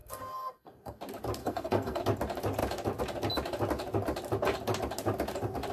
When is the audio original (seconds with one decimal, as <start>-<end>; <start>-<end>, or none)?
1.0-1.4; 2.0-5.7